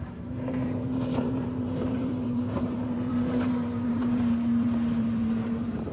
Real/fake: fake